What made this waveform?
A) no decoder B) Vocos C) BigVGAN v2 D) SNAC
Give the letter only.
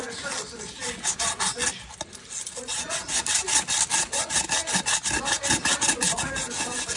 A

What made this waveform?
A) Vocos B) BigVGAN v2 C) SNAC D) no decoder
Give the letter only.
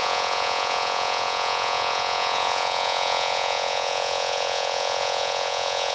A